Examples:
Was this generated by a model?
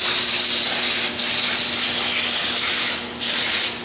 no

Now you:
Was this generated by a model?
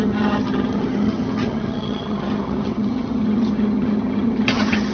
yes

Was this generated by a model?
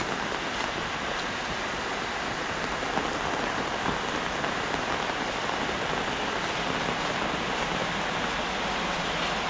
no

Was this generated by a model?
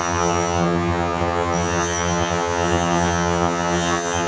yes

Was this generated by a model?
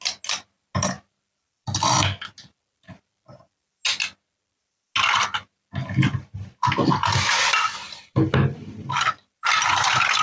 no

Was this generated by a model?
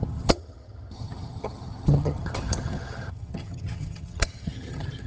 yes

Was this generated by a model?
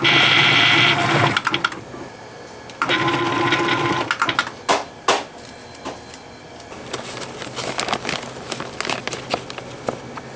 no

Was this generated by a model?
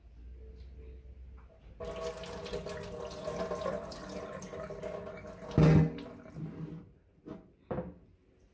no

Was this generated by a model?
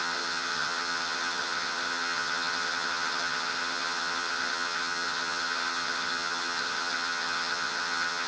yes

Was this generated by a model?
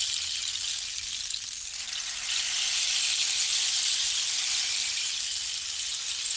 no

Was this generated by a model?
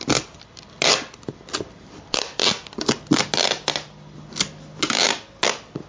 no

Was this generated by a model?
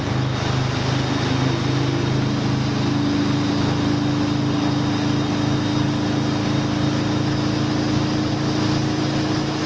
no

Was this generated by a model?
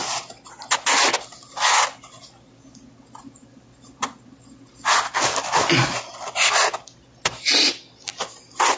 no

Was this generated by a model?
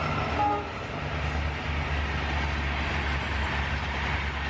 no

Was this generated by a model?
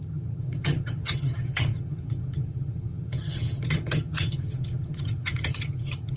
yes